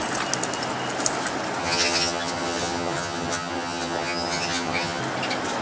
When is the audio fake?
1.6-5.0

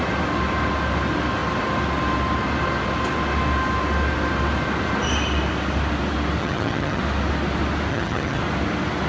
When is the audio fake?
6.4-7.0; 7.9-8.4

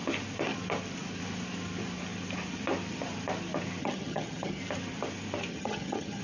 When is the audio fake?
3.8-4.6; 5.5-6.2

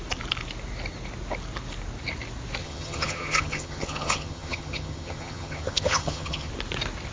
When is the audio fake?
2.6-6.5

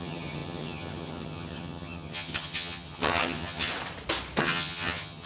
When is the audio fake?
0.0-3.7; 4.4-5.3

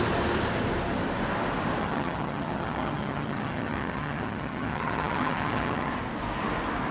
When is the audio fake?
1.8-5.9

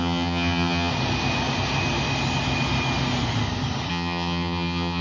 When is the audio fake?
0.0-0.9; 3.9-5.0